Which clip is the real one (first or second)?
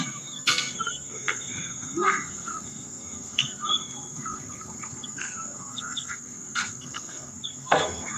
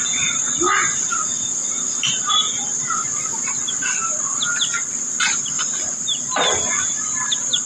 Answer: second